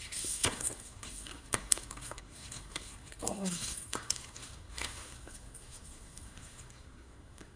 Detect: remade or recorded remade